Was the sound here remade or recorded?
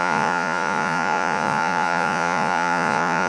remade